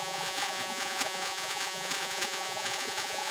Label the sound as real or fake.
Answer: fake